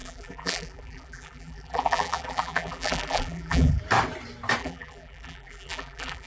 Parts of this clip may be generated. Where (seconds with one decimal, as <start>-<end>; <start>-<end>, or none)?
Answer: 0.0-3.8; 4.6-6.3